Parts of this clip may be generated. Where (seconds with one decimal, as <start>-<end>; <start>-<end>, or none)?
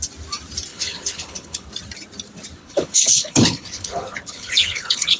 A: 0.7-1.7; 2.6-5.2